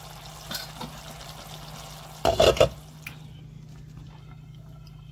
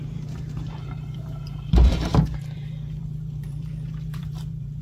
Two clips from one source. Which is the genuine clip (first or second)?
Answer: first